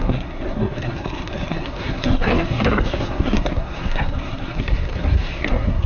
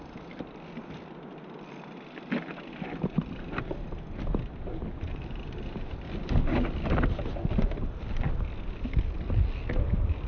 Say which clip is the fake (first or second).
first